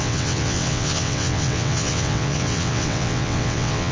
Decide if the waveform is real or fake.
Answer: fake